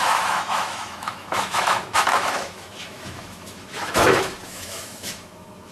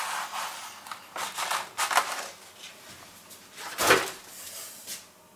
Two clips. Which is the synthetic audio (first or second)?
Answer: first